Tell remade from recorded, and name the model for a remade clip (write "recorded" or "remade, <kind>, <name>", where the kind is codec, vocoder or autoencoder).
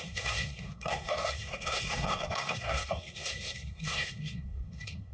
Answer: remade, codec, SNAC